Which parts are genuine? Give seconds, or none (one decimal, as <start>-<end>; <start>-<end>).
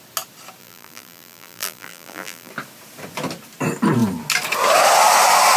0.0-0.6; 2.5-5.6